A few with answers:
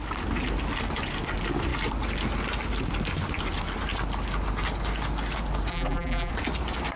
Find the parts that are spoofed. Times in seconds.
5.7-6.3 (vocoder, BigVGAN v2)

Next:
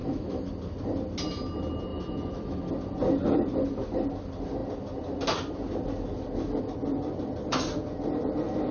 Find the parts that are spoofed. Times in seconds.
0.0-0.5 (autoencoder, DAC-VAE); 1.9-2.7

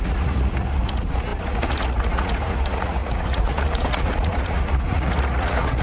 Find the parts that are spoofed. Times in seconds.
0.0-5.8 (vocoder, Vocos)

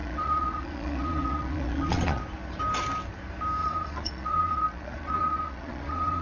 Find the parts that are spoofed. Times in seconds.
0.0-2.2 (vocoder, Vocos); 3.6-6.2

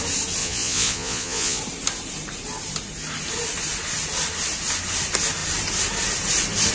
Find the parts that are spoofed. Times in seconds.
0.4-1.6 (vocoder, Vocos)